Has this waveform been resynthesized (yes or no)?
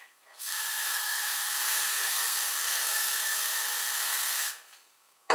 yes